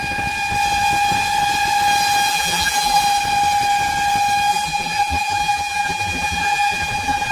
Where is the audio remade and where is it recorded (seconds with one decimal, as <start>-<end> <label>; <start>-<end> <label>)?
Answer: 0.0-2.3 recorded; 2.3-3.0 remade; 3.0-4.5 recorded; 4.5-7.3 remade